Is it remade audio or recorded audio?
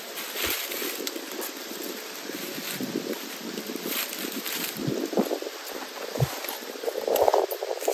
remade